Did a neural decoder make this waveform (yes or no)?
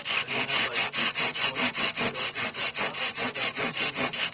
yes